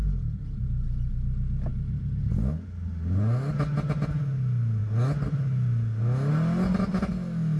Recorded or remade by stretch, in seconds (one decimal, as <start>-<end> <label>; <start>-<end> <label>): 0.0-7.6 recorded